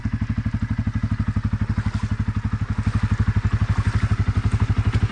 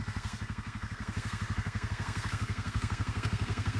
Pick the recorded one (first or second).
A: first